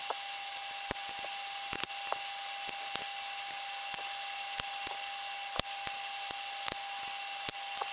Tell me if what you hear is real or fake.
real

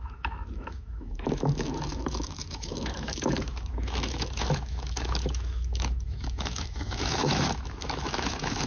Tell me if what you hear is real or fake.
fake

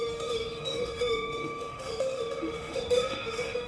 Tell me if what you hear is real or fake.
fake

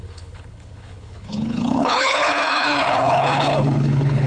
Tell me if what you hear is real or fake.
fake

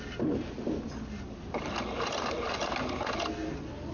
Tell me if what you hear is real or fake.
real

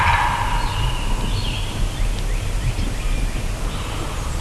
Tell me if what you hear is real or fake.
real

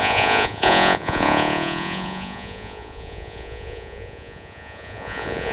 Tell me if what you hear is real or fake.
fake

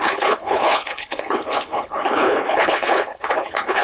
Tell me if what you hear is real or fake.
fake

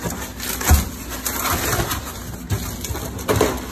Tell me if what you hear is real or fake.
real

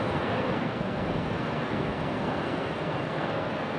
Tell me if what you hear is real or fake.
fake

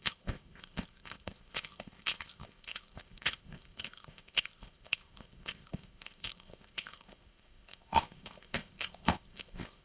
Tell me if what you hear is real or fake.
fake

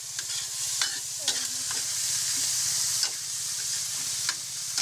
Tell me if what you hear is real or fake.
real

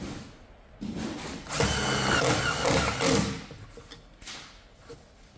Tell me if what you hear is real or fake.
real